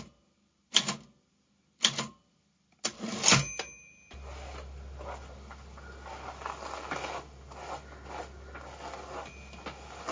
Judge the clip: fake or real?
real